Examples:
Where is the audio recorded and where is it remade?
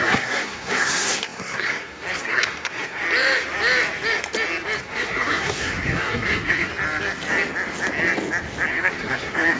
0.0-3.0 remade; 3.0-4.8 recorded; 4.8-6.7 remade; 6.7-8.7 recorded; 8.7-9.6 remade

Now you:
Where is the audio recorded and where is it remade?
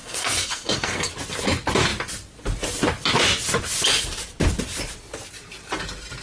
0.0-1.1 remade; 1.1-6.2 recorded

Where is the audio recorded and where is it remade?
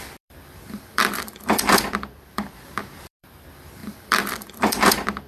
0.0-5.3 remade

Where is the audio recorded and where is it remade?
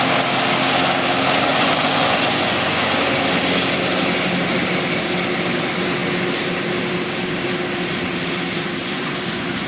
0.0-1.5 recorded; 1.5-3.2 remade; 3.2-8.8 recorded; 8.8-9.7 remade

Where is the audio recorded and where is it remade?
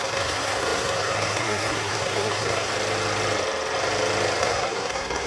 0.0-2.7 remade; 2.7-4.4 recorded; 4.4-5.3 remade